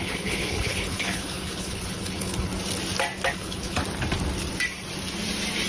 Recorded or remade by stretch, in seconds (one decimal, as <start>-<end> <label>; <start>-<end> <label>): 0.0-2.5 remade; 2.5-3.3 recorded; 3.3-3.8 remade; 3.8-5.7 recorded